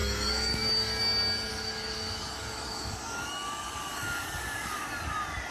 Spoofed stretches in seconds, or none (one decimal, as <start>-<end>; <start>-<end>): 0.0-1.0; 1.5-4.8

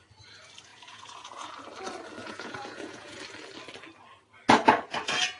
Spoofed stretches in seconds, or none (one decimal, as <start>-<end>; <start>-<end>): 0.7-1.5; 2.2-3.2

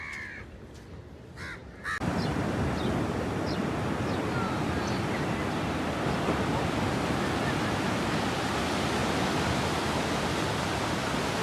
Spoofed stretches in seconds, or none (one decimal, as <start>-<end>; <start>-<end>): none

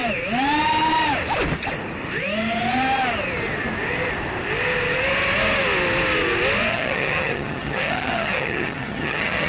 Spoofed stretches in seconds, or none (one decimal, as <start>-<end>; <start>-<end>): 6.7-9.5

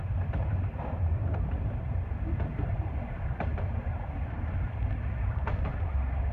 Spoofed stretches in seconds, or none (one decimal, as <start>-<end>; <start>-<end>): 0.0-2.5; 3.3-6.3